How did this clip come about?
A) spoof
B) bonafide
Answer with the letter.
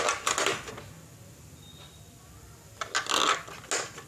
B